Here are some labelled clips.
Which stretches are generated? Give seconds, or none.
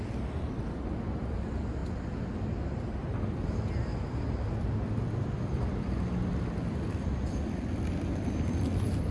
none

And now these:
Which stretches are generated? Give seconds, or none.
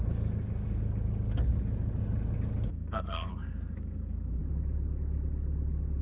2.7-3.3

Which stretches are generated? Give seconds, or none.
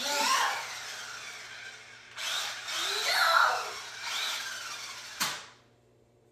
none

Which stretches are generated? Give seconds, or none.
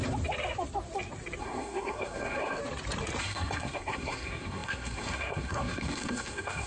1.4-2.6; 3.2-6.7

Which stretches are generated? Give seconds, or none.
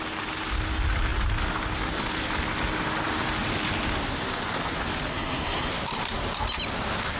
5.1-5.7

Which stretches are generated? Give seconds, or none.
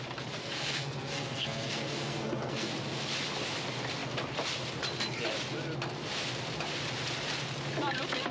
0.4-2.7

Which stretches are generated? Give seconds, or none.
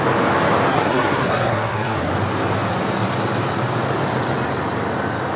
0.7-2.1